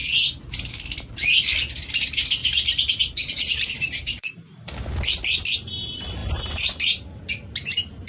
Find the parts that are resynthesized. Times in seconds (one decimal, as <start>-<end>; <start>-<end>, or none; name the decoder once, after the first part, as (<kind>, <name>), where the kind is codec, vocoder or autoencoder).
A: 2.4-4.3 (vocoder, BigVGAN v2); 6.2-7.2